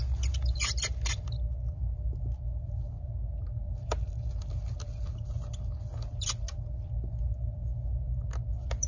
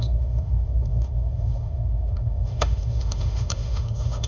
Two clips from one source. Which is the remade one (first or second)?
second